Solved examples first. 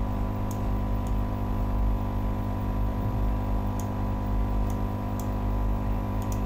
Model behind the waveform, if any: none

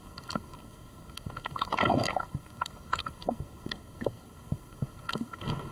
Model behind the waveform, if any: codec, SNAC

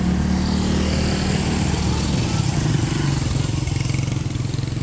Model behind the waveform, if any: none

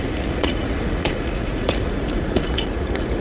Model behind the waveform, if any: vocoder, Vocos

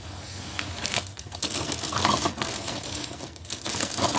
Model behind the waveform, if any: codec, SNAC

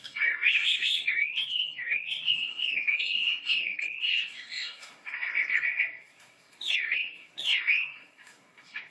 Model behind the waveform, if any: codec, SNAC